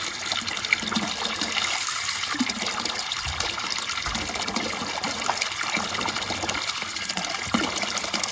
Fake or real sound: fake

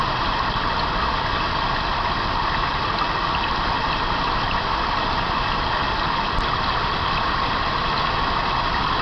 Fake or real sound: real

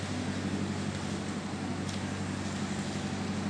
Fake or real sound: real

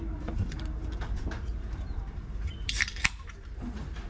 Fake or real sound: fake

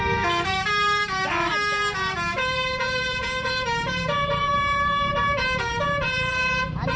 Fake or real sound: fake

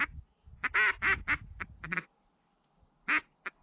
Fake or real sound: real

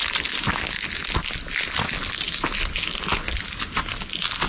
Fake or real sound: real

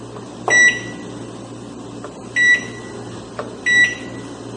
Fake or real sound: real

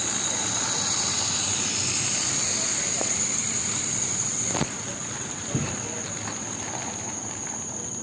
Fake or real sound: fake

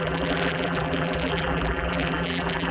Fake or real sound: fake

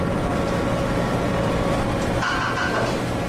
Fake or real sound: real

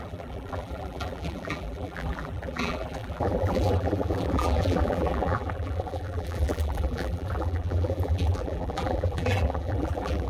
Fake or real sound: fake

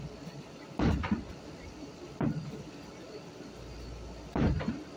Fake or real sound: fake